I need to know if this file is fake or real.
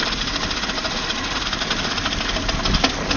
real